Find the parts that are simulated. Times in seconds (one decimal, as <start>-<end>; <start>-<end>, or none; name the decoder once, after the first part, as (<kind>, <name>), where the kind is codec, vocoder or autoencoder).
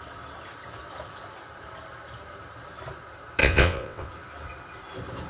3.4-4.1 (vocoder, WaveNeXt)